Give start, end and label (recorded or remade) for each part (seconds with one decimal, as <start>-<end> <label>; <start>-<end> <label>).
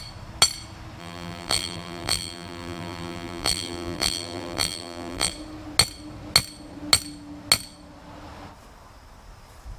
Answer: 0.0-1.0 recorded; 1.0-5.3 remade; 5.3-9.8 recorded